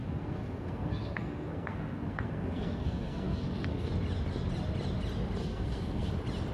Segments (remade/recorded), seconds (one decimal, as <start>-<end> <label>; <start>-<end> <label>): 0.0-3.9 remade; 3.9-5.4 recorded; 5.4-6.1 remade; 6.1-6.5 recorded